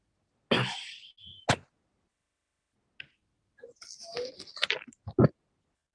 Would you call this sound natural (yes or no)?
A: yes